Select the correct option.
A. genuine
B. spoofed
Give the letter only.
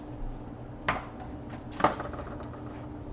A